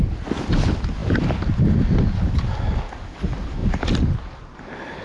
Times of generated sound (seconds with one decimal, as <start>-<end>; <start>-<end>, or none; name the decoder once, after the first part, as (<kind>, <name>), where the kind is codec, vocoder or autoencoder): none

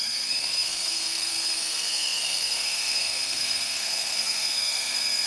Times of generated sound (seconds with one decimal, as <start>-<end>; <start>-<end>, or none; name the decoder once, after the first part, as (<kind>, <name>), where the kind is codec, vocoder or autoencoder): 0.0-5.3 (codec, SNAC)